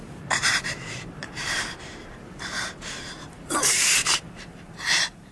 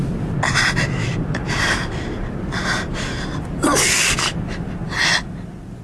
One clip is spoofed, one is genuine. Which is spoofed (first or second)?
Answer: first